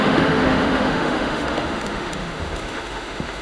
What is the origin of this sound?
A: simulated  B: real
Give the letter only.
A